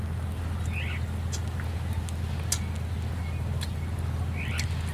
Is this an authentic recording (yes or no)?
yes